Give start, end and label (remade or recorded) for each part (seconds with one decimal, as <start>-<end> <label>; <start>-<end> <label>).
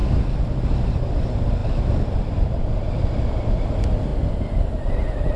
0.0-1.6 recorded; 1.6-2.6 remade; 2.6-5.4 recorded